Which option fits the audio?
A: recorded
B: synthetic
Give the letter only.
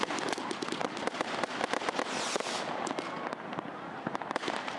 A